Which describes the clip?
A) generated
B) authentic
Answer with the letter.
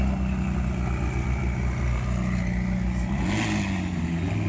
B